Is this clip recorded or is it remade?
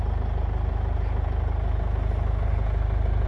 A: recorded